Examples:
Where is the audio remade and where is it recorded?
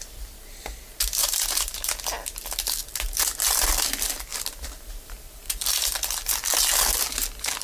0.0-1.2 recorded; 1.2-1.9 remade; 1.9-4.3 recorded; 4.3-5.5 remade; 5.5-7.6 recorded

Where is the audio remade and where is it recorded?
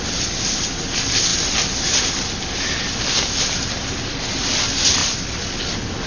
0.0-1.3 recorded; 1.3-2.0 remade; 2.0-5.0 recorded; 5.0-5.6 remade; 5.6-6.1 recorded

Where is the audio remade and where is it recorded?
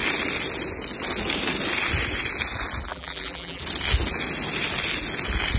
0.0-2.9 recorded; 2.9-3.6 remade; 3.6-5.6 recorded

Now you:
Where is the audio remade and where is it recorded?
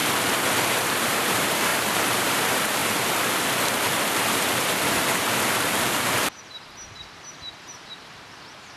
0.0-1.0 recorded; 1.0-2.8 remade; 2.8-7.6 recorded; 7.6-8.8 remade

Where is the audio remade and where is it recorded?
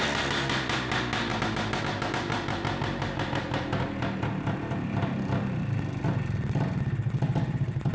0.0-1.3 recorded; 1.3-3.0 remade; 3.0-7.9 recorded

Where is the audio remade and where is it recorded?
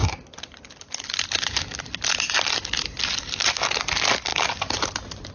0.0-4.3 recorded; 4.3-5.3 remade